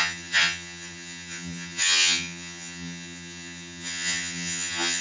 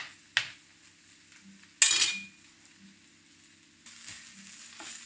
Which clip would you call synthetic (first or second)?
first